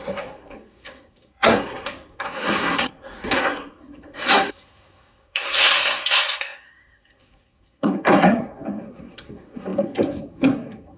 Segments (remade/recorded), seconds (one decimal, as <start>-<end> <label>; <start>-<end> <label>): 0.0-11.0 remade